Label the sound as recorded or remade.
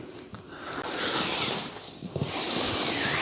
recorded